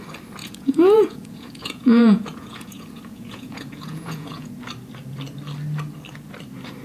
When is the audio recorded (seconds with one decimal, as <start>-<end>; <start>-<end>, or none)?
0.0-0.4; 4.5-6.8

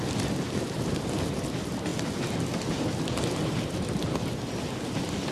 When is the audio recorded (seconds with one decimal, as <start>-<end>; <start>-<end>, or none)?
0.0-5.3

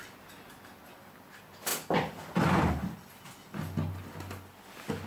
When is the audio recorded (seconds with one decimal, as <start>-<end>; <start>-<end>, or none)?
0.0-5.1

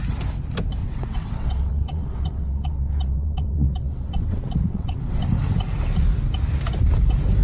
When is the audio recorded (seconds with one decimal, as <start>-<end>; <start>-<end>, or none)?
0.0-0.8; 5.2-7.4

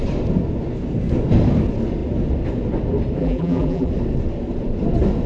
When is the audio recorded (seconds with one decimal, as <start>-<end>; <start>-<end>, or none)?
0.0-3.2; 3.9-5.3